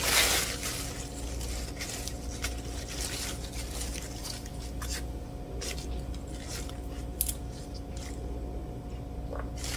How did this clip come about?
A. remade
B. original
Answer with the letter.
B